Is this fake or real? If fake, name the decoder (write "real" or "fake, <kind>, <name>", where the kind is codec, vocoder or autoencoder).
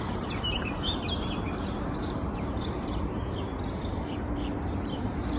fake, vocoder, BigVGAN v2